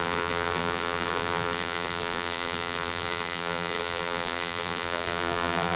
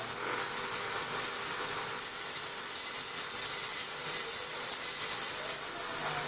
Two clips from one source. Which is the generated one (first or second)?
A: first